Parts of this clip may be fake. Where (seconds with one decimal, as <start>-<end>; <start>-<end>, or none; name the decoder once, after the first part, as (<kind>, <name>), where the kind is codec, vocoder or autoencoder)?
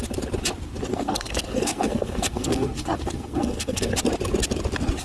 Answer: 0.9-3.9 (codec, SNAC)